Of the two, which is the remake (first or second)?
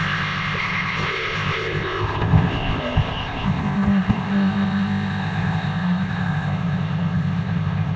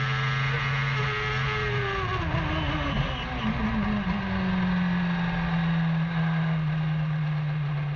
first